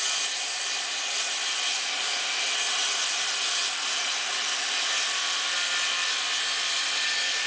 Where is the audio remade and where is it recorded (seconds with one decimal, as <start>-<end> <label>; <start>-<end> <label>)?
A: 0.0-7.5 recorded